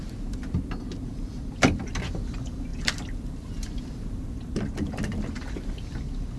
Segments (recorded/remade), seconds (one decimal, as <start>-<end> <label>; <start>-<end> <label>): 0.0-0.4 remade; 0.4-1.0 recorded; 1.0-6.4 remade